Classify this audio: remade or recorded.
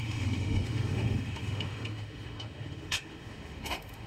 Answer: remade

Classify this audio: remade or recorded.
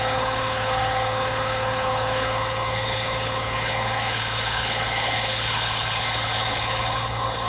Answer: remade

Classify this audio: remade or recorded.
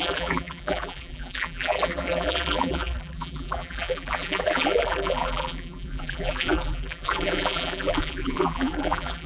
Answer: remade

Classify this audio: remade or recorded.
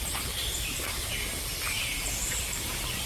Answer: remade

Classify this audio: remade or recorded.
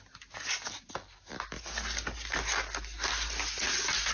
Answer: recorded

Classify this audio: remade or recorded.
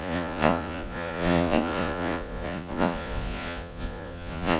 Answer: remade